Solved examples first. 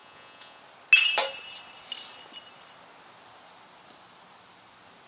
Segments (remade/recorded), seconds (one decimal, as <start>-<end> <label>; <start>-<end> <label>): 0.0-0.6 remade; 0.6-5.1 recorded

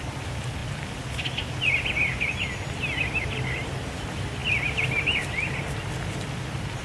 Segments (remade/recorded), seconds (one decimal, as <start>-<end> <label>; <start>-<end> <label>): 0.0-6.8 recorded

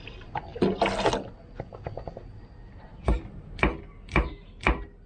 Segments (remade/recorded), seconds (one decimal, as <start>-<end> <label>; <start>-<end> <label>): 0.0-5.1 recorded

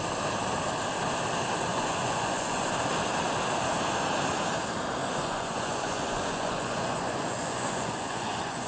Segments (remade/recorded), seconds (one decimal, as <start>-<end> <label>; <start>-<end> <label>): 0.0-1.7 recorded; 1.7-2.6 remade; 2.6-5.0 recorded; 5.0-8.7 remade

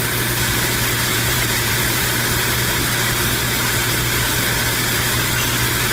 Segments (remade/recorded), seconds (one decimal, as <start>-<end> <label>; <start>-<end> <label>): 0.0-1.1 recorded; 1.1-2.0 remade; 2.0-5.9 recorded